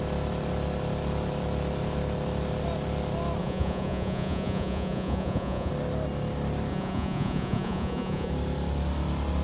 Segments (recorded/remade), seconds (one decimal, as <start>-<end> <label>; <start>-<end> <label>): 0.0-3.4 recorded; 3.4-5.7 remade; 5.7-6.7 recorded; 6.7-8.3 remade; 8.3-9.4 recorded